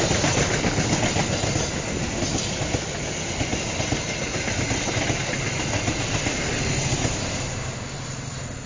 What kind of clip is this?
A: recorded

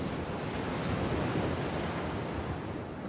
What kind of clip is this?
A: recorded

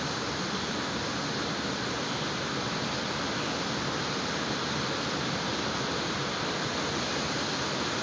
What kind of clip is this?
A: recorded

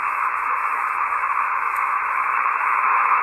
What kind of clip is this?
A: remade